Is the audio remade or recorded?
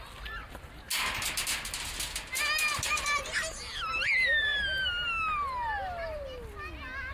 recorded